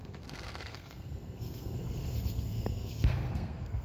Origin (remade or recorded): remade